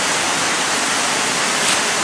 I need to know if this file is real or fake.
real